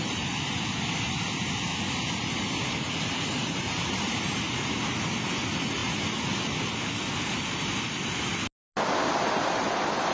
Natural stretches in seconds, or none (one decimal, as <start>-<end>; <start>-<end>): 0.0-3.4; 4.4-10.1